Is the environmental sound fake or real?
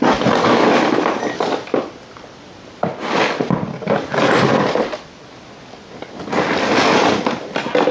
real